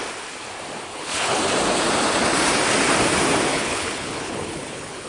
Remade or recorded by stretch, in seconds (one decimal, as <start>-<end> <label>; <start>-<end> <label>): 0.0-0.9 recorded; 0.9-1.4 remade; 1.4-3.5 recorded; 3.5-5.1 remade